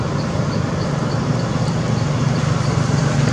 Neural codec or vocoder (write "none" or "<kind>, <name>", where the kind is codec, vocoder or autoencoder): none